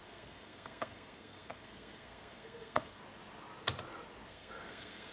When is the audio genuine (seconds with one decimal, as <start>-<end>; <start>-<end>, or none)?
3.0-4.3